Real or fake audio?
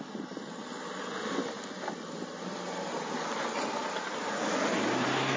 real